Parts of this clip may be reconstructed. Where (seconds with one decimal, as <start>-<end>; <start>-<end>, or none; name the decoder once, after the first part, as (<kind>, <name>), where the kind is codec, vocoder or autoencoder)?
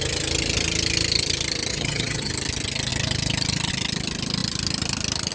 1.7-2.3 (vocoder, HiFi-GAN)